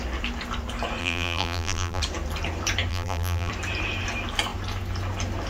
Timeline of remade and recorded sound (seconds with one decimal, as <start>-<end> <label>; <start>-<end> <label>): 0.0-1.0 recorded; 1.0-2.0 remade; 2.0-2.9 recorded; 2.9-3.5 remade; 3.5-5.5 recorded